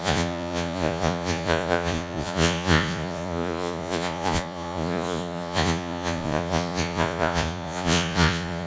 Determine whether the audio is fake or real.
fake